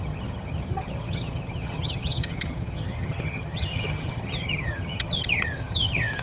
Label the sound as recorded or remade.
remade